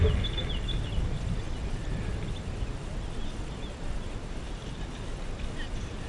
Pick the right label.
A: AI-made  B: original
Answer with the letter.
B